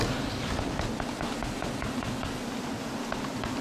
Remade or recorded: recorded